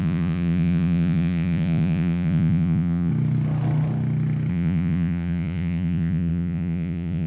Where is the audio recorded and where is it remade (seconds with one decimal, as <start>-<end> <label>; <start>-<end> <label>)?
0.0-3.1 remade; 3.1-4.5 recorded; 4.5-7.3 remade